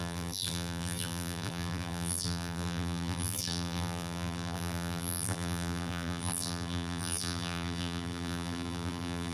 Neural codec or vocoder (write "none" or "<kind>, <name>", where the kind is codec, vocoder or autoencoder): vocoder, BigVGAN v2